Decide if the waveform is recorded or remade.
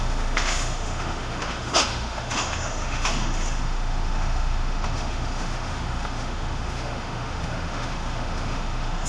remade